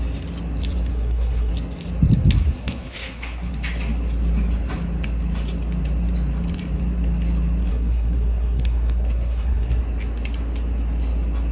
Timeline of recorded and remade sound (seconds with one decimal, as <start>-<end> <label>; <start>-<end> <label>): 0.0-0.9 recorded; 0.9-1.5 remade; 1.5-2.4 recorded; 2.4-3.5 remade; 3.5-7.7 recorded; 7.7-9.8 remade; 9.8-11.5 recorded